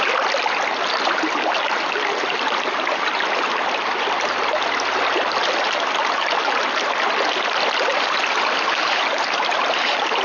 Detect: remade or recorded recorded